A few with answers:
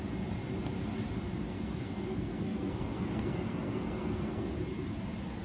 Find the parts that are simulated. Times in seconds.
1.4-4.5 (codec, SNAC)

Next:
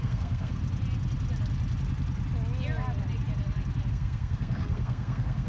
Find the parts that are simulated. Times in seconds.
0.0-0.6 (codec, SNAC); 3.9-5.5

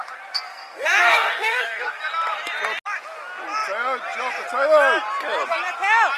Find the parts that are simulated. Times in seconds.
0.5-2.0 (codec, SNAC)

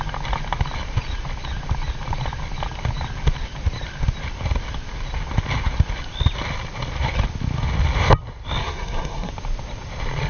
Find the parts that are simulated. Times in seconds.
8.6-9.3 (codec, SNAC)

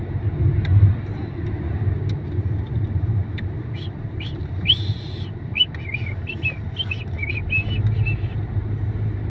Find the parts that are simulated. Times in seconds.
none

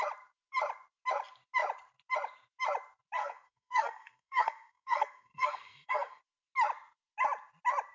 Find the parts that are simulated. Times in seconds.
3.2-6.2 (codec, SNAC)

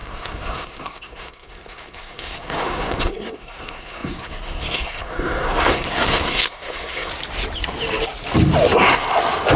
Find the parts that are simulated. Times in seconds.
0.0-7.1 (codec, SNAC)